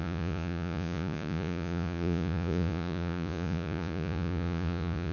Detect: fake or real fake